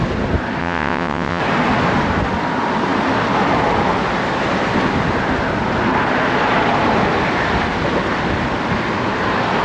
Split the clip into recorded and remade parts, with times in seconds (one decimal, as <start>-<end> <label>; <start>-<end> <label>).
0.0-0.6 recorded; 0.6-1.4 remade; 1.4-9.6 recorded